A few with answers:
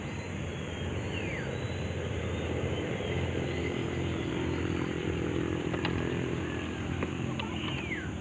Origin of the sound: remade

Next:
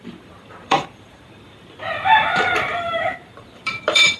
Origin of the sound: remade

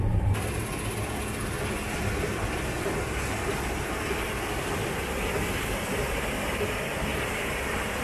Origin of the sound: recorded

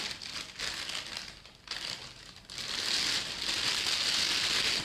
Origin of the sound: recorded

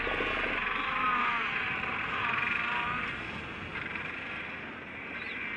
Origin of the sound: recorded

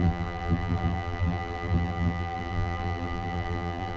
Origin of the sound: remade